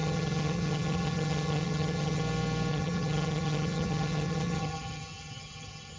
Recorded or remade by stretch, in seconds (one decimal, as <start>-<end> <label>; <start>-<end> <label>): 0.0-2.2 remade; 2.2-2.7 recorded; 2.7-6.0 remade